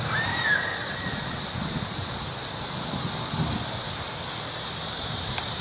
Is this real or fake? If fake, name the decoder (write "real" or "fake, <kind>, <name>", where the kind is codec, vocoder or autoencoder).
real